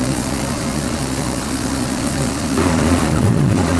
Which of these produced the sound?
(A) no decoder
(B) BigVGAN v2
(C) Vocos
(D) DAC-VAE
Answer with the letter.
C